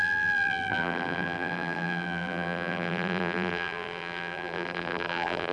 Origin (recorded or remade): remade